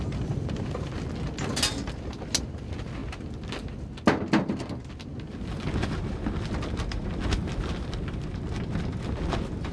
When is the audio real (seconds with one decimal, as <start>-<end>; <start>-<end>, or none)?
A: 0.0-9.7